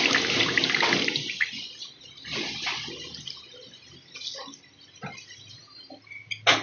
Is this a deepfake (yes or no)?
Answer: no